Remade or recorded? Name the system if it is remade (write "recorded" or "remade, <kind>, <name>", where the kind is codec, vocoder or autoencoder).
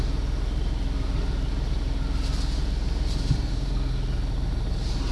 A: recorded